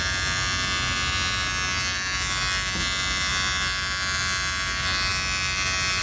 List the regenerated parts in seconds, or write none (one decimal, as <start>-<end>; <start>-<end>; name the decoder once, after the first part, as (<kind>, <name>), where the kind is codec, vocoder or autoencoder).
none